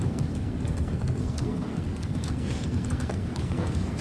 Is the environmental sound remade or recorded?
remade